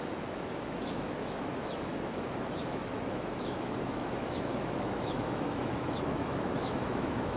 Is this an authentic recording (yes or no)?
no